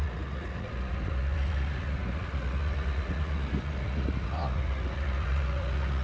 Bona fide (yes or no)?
no